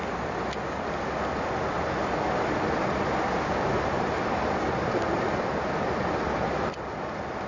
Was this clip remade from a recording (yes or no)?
yes